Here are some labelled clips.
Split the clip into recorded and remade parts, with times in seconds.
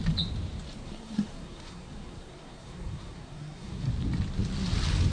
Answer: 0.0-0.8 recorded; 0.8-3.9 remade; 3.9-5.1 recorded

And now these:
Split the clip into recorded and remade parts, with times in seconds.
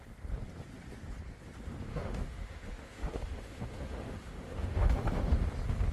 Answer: 0.0-1.9 recorded; 1.9-5.4 remade; 5.4-5.9 recorded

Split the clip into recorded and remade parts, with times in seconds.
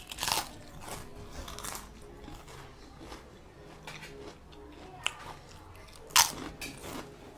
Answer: 0.0-7.4 recorded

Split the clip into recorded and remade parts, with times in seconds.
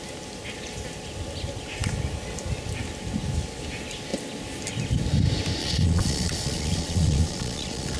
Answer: 0.0-5.6 recorded; 5.6-8.0 remade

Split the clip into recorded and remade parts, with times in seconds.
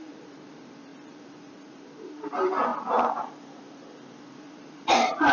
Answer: 0.0-5.3 remade